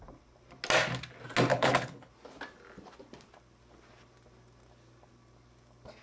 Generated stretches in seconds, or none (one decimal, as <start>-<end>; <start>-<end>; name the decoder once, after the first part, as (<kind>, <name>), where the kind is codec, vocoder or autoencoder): 1.5-2.1 (codec, HILCodec)